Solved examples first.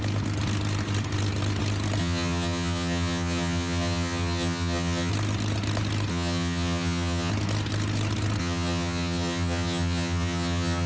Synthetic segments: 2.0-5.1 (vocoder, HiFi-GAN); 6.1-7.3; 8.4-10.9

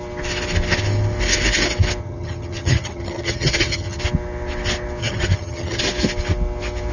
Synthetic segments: 2.0-4.0 (vocoder, HiFi-GAN); 5.0-5.8